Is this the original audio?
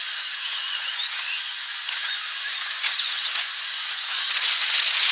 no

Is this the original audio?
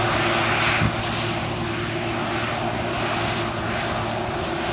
yes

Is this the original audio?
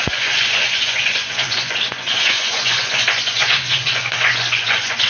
no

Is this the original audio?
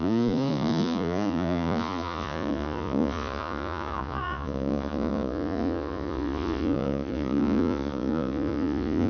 no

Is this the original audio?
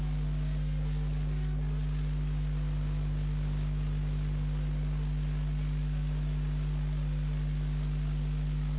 yes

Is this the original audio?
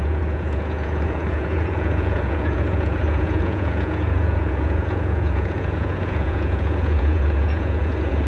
no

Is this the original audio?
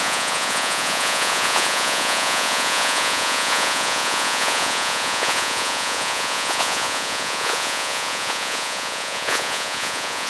no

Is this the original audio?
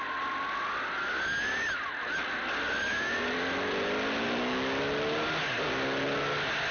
yes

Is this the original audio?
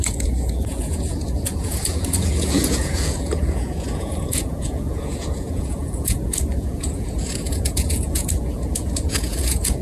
no